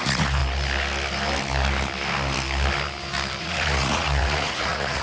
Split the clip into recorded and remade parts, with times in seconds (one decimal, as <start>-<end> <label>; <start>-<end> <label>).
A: 0.0-0.4 remade; 0.4-3.4 recorded; 3.4-5.0 remade